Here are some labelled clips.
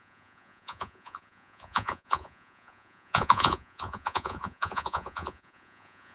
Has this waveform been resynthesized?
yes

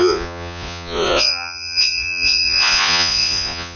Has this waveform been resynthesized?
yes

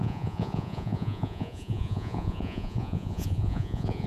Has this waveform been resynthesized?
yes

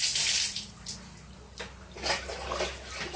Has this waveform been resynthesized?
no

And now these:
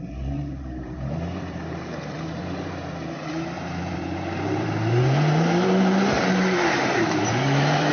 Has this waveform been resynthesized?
yes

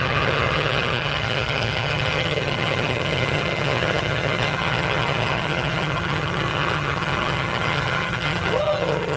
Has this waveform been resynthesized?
yes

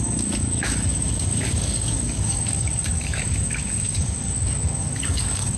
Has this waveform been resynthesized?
yes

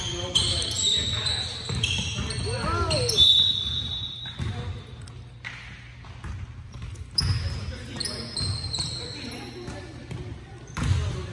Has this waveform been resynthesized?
no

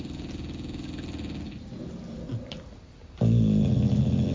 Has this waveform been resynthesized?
no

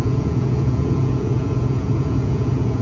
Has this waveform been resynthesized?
yes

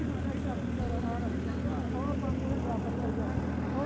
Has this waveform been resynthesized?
no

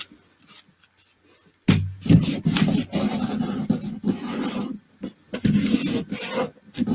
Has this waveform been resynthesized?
no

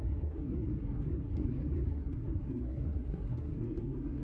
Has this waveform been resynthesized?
yes